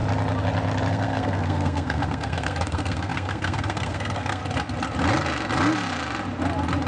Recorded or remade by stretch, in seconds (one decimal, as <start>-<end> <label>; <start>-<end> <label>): 0.0-0.9 recorded; 0.9-4.4 remade; 4.4-6.9 recorded